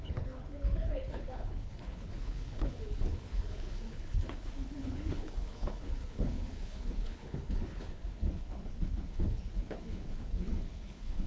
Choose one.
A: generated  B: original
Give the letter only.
A